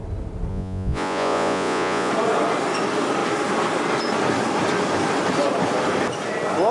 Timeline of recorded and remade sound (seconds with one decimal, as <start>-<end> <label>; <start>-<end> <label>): 0.0-0.5 recorded; 0.5-2.1 remade; 2.1-6.7 recorded